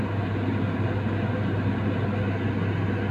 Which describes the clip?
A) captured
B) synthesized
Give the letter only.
A